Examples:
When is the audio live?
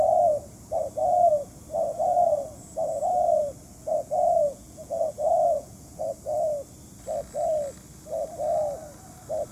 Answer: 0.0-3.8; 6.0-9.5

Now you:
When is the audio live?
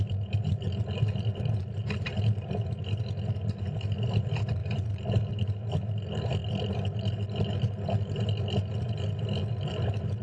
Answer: 0.0-10.2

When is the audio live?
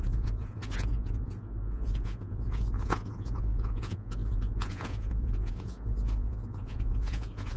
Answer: none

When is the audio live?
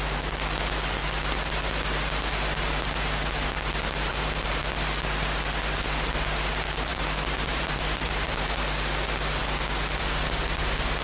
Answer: 0.0-4.1; 4.6-6.9; 8.5-11.0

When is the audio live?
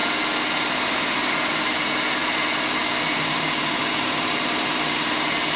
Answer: 0.0-5.6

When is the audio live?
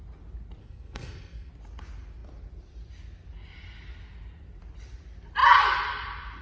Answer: 0.0-0.6; 1.5-6.4